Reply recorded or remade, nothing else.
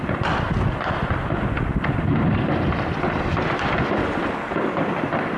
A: recorded